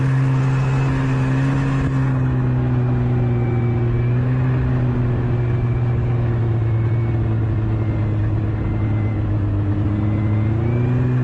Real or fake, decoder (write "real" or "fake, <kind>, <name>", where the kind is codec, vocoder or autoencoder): real